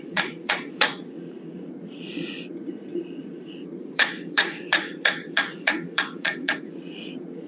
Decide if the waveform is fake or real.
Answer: fake